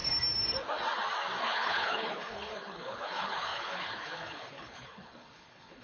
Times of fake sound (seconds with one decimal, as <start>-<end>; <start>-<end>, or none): 1.4-5.8